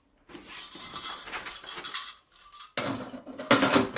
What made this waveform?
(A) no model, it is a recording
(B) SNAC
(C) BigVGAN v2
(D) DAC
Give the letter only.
A